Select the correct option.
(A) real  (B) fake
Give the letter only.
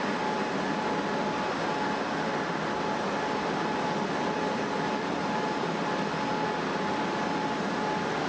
A